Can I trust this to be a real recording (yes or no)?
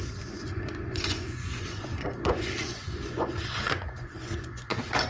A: no